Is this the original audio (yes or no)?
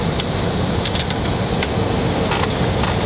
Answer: yes